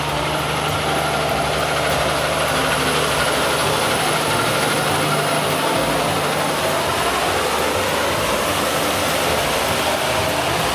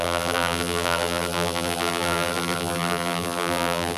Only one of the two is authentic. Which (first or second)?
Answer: first